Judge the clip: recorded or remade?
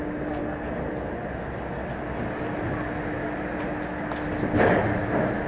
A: recorded